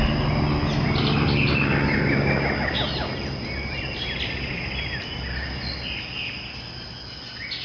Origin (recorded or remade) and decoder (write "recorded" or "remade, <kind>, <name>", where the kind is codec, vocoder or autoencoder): recorded